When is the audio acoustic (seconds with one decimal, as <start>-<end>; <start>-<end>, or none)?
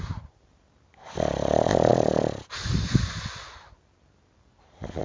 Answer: 0.0-5.0